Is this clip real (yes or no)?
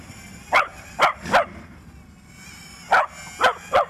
yes